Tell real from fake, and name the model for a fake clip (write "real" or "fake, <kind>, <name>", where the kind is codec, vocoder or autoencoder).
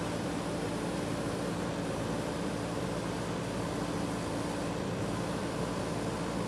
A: real